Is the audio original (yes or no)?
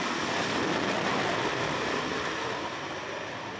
yes